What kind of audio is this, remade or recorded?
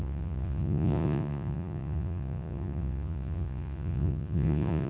remade